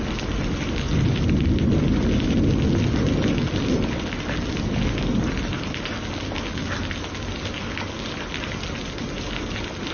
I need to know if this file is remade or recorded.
recorded